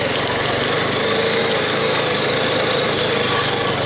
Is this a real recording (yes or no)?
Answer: yes